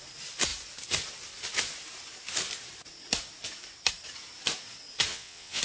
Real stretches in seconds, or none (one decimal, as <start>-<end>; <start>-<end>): 0.0-5.1